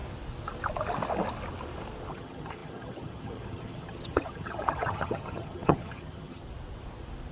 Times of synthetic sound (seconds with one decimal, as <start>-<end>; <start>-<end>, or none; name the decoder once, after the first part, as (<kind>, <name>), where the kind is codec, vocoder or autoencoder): 2.1-6.4 (vocoder, HiFi-GAN)